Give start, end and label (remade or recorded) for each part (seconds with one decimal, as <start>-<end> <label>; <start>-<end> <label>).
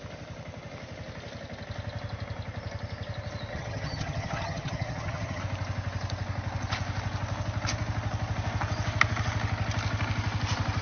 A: 0.0-3.5 recorded; 3.5-5.4 remade; 5.4-10.8 recorded